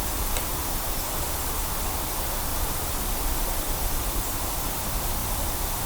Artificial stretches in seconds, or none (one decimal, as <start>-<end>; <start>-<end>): 0.0-5.2